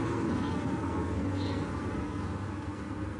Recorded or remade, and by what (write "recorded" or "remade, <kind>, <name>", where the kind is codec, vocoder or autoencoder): remade, codec, SNAC